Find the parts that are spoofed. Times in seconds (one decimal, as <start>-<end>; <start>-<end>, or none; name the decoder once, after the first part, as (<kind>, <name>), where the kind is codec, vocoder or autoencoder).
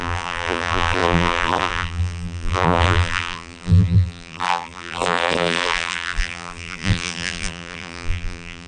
0.0-8.7 (vocoder, BigVGAN v2)